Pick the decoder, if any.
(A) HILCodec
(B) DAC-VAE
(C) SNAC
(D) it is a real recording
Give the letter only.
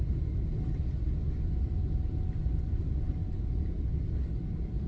D